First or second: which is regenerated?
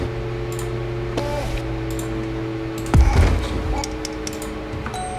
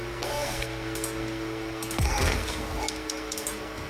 second